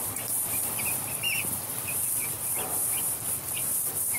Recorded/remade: remade